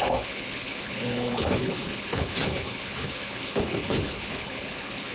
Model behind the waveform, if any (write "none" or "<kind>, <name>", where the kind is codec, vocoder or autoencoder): codec, HILCodec